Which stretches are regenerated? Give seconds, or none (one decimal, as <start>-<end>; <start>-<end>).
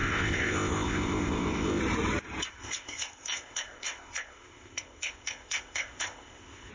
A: 0.0-1.8; 2.5-6.7